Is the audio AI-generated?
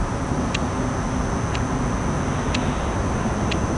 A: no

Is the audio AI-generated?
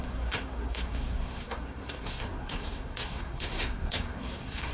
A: yes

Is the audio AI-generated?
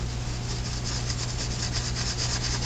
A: no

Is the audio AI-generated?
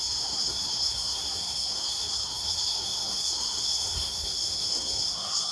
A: yes